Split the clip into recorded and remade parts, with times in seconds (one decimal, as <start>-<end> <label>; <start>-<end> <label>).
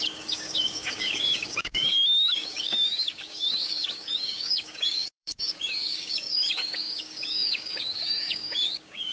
0.0-9.1 remade